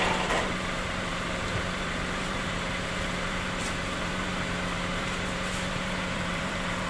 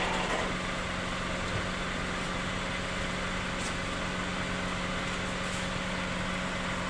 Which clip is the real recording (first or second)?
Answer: second